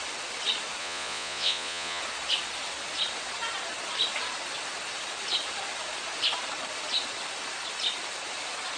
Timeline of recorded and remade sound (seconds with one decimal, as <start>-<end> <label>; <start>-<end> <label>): 0.0-0.8 recorded; 0.8-2.0 remade; 2.0-8.8 recorded